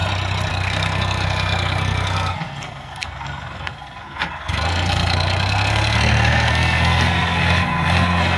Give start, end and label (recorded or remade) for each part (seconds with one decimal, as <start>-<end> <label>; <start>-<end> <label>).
0.0-0.5 recorded; 0.5-8.4 remade